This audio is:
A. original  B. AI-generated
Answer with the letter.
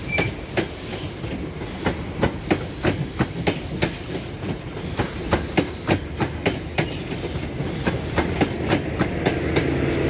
A